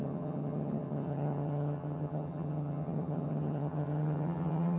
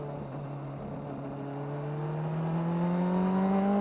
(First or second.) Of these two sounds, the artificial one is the first